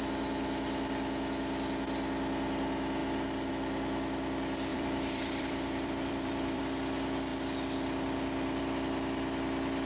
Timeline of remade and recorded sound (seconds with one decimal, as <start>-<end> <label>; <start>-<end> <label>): 0.0-4.7 recorded; 4.7-6.6 remade; 6.6-9.9 recorded